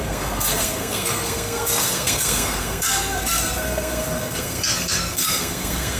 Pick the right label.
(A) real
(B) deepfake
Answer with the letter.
B